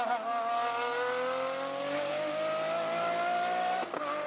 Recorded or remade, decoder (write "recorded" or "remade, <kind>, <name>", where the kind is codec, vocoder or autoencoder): recorded